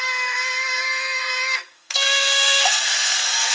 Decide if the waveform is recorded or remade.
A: remade